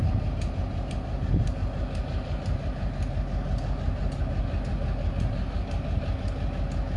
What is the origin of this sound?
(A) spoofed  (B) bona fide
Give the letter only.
B